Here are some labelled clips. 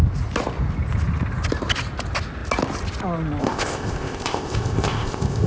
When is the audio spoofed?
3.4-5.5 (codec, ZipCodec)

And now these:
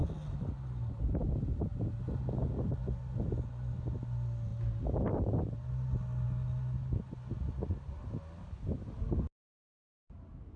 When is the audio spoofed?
none

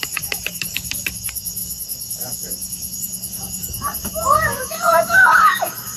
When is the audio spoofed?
0.0-6.0 (codec, DAC)

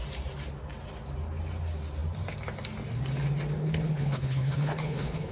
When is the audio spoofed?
3.6-5.3 (codec, HILCodec)

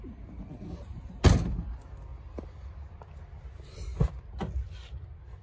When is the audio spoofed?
2.1-3.0 (vocoder, BigVGAN v2)

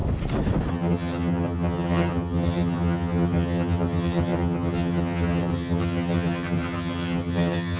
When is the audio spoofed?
0.7-7.8 (vocoder, HiFi-GAN)

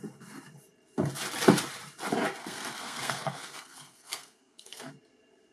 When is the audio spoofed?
2.4-4.9 (codec, SNAC)